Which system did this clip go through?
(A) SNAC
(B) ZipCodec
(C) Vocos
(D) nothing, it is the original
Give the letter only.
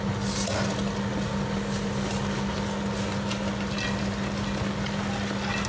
D